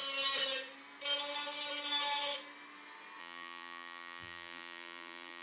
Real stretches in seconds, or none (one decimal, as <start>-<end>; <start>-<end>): 0.0-3.2

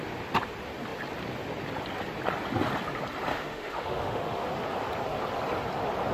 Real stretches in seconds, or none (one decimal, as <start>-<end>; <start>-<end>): 0.0-3.3; 4.5-6.1

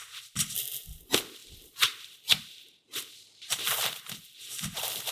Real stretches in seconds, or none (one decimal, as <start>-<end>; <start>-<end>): 0.0-1.4; 4.5-5.1

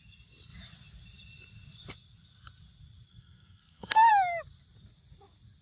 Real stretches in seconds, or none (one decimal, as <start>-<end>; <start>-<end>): 0.0-3.1; 4.1-5.6